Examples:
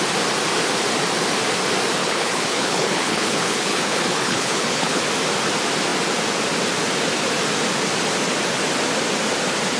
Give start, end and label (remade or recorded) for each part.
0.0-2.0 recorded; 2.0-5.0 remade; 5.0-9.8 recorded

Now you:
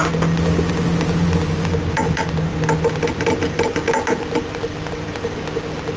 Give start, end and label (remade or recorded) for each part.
0.0-6.0 recorded

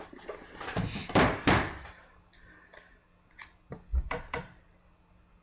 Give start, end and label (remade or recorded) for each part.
0.0-1.0 recorded; 1.0-1.5 remade; 1.5-3.9 recorded; 3.9-5.0 remade; 5.0-5.4 recorded